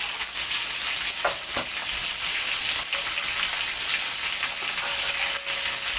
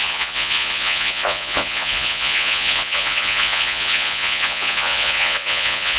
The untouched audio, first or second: first